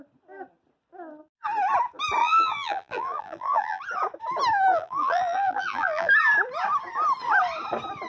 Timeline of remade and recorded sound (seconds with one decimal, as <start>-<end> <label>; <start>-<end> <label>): 0.0-2.2 recorded; 2.2-3.8 remade; 3.8-4.7 recorded; 4.7-6.1 remade; 6.1-8.1 recorded